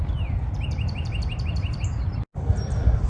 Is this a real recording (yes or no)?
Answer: yes